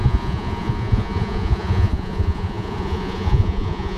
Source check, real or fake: fake